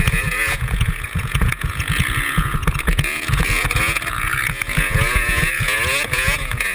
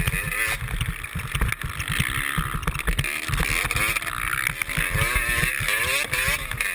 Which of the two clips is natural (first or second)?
second